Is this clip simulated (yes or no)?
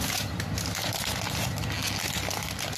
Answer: no